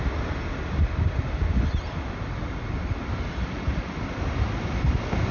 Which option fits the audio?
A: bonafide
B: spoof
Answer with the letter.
A